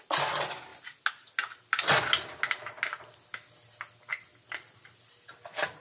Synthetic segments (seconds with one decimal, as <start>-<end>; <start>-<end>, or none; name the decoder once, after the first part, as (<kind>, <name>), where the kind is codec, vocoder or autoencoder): none